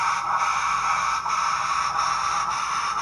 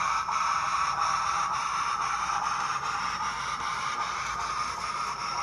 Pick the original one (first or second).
first